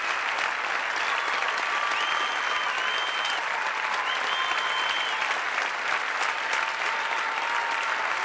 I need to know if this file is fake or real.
real